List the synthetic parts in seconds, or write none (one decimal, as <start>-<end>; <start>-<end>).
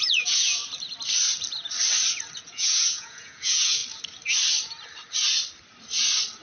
0.0-0.6; 2.4-3.8